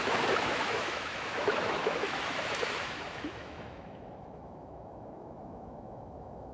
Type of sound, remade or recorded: remade